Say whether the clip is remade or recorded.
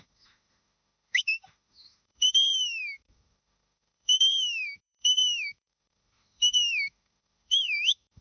remade